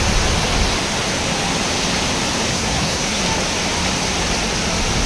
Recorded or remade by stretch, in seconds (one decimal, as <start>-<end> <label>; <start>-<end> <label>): 0.0-2.5 recorded; 2.5-3.2 remade; 3.2-5.1 recorded